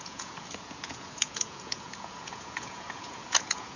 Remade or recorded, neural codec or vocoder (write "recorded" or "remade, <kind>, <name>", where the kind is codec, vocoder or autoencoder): remade, vocoder, Vocos